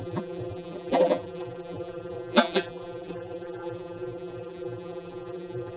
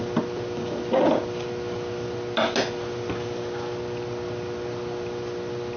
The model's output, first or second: first